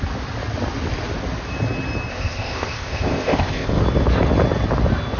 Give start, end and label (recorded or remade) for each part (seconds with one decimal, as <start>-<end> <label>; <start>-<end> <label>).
0.0-2.1 recorded; 2.1-3.8 remade; 3.8-5.2 recorded

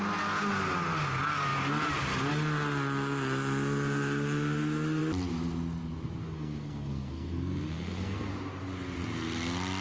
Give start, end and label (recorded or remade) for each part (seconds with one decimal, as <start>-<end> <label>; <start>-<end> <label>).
0.0-6.2 recorded; 6.2-8.3 remade; 8.3-9.8 recorded

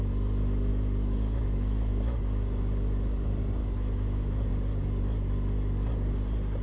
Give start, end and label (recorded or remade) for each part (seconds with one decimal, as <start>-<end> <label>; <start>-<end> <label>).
0.0-0.7 recorded; 0.7-2.6 remade; 2.6-3.6 recorded; 3.6-4.5 remade; 4.5-6.6 recorded

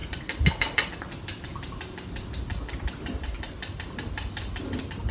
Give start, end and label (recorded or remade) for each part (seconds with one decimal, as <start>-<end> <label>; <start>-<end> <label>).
0.0-5.1 recorded